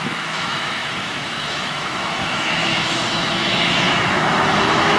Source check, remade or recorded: remade